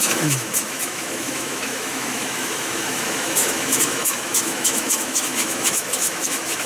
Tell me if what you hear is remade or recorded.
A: remade